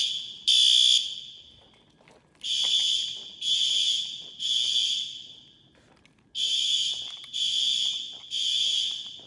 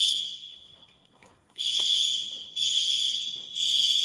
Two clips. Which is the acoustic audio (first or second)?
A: first